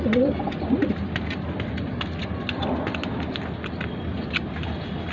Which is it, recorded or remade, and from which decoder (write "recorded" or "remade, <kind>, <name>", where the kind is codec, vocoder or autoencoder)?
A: recorded